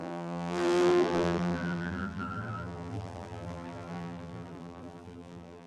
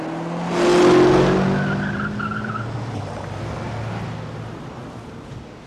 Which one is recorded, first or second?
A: second